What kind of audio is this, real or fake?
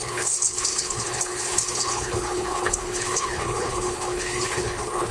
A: fake